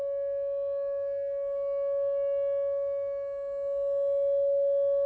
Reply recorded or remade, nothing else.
recorded